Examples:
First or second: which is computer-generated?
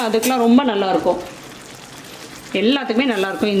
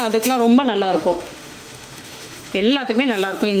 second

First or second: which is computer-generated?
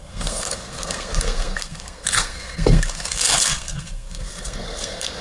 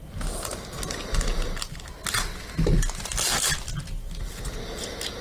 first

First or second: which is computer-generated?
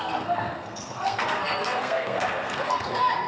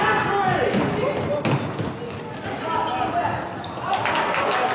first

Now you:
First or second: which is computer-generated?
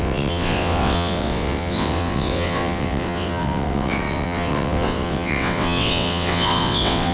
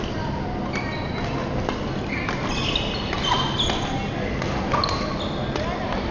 first